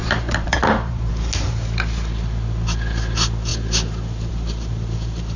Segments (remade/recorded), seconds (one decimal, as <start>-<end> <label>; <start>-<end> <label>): 0.0-1.1 remade; 1.1-5.4 recorded